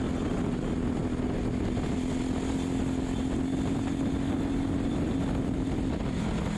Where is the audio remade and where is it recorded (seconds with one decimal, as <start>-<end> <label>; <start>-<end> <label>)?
0.0-6.6 recorded